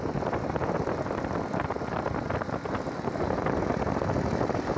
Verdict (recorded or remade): recorded